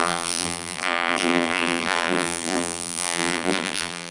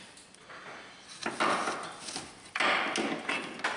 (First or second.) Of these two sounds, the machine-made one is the first